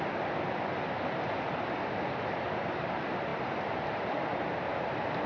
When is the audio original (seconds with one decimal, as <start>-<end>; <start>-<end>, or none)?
0.0-5.3